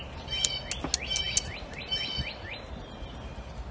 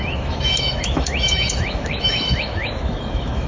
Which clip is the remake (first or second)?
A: second